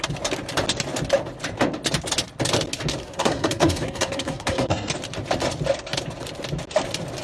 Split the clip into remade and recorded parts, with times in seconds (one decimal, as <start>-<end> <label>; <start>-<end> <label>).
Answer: 0.0-3.0 recorded; 3.0-4.9 remade; 4.9-7.2 recorded